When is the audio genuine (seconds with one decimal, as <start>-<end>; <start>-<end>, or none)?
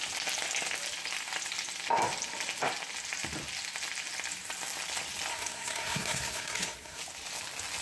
0.0-5.3; 7.0-7.8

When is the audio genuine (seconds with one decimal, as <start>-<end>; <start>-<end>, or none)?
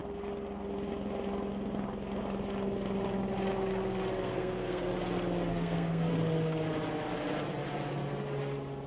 0.0-4.2; 4.9-5.5; 6.1-8.9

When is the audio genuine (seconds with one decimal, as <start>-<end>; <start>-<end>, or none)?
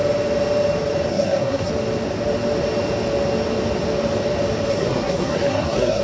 0.0-1.1; 1.7-4.7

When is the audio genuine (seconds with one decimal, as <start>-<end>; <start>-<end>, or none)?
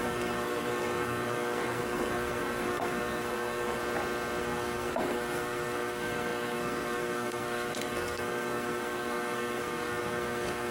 3.8-4.4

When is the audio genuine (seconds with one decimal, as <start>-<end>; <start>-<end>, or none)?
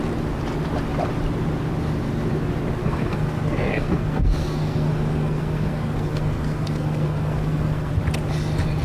0.0-2.8; 7.9-8.8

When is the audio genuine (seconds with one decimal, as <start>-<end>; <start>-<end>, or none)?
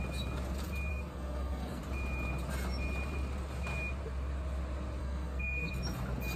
0.0-0.9; 1.8-5.0; 5.7-6.4